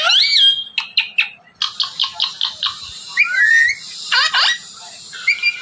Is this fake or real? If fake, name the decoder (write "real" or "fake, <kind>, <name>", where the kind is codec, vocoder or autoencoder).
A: real